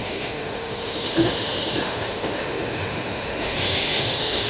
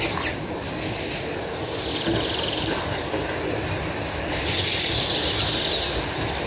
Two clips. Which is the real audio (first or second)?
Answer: second